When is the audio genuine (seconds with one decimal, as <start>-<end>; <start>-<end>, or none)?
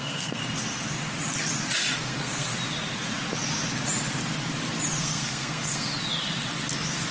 0.4-2.0; 2.5-5.0; 5.9-7.1